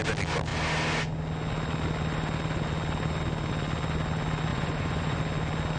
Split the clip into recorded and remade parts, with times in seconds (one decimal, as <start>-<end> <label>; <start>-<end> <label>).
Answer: 0.0-4.5 recorded; 4.5-5.2 remade; 5.2-5.8 recorded